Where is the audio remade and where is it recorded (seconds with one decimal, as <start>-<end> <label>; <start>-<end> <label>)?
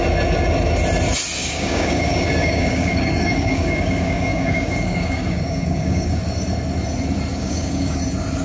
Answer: 0.0-1.4 recorded; 1.4-6.2 remade; 6.2-7.3 recorded; 7.3-8.0 remade; 8.0-8.4 recorded